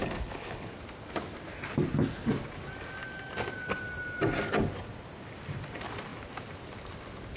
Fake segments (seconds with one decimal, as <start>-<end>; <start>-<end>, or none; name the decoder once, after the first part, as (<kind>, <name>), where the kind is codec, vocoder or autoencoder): 0.0-0.7 (codec, HILCodec)

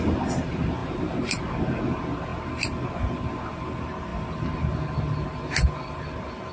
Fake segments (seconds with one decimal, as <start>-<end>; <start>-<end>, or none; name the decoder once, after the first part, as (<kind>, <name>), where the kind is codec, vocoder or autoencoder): 0.8-1.4 (vocoder, BigVGAN v2)